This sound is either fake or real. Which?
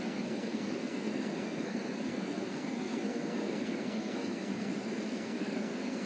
fake